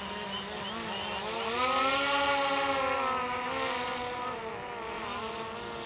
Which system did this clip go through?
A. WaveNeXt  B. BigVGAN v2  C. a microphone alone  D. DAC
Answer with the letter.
C